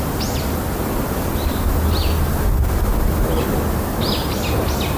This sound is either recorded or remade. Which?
recorded